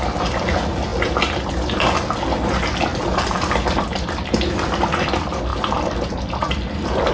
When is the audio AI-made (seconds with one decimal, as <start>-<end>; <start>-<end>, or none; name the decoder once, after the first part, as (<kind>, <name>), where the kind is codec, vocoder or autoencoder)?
none